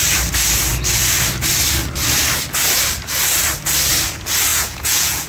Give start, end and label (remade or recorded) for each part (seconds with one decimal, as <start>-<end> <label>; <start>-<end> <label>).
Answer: 0.0-4.5 recorded; 4.5-5.3 remade